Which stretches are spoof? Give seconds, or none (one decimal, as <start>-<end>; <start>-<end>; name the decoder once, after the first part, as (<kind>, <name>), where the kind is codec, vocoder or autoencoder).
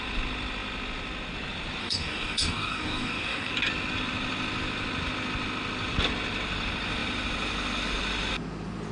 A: 1.8-3.5 (codec, DAC)